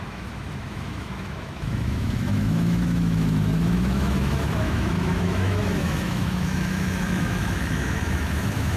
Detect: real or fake fake